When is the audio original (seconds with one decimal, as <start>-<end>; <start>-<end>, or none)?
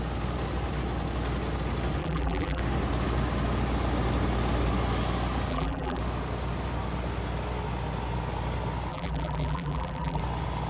0.0-2.0; 2.6-5.5; 6.0-8.9; 10.2-10.7